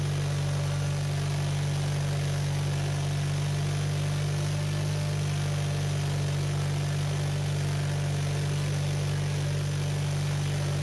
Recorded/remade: recorded